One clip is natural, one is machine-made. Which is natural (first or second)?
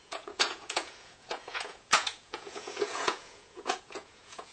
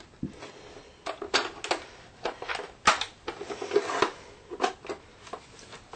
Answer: second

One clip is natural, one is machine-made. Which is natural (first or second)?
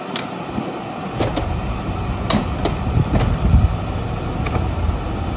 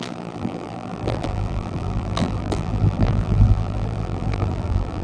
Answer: first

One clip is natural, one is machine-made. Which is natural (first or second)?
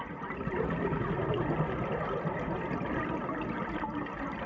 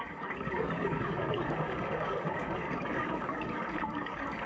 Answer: first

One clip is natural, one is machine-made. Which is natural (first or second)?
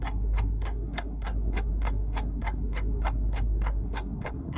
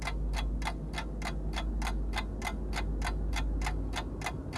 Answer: second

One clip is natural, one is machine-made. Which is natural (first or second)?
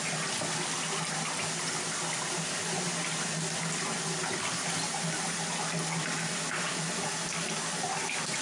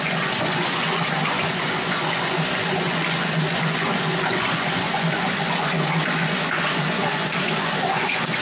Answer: first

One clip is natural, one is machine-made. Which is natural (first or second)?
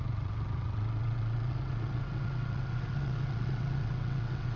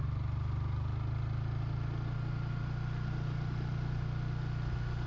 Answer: second